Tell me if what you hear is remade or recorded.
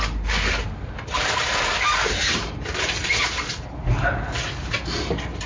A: recorded